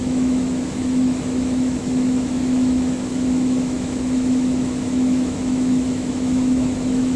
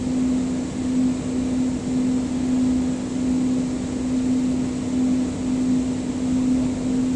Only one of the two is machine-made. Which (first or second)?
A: first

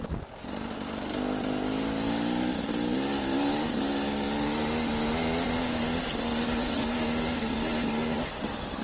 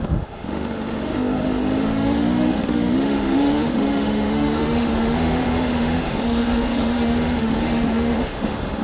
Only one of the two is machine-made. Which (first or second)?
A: second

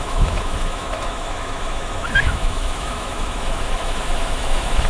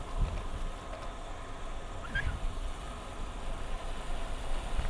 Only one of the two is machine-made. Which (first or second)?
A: first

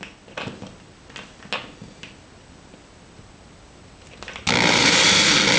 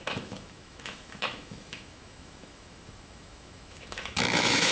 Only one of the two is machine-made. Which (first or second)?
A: second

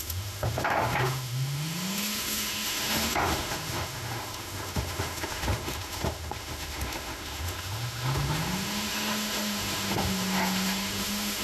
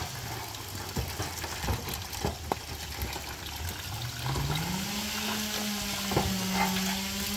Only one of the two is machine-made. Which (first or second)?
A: first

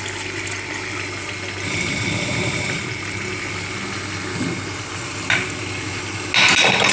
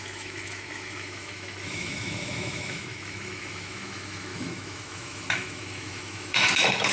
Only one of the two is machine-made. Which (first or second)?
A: second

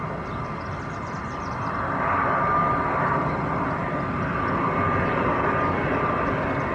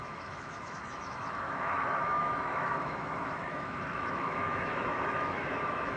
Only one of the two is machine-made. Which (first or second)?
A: second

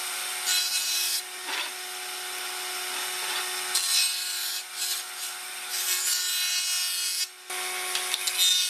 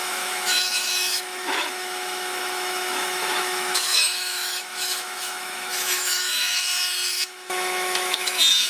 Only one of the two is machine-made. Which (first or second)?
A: second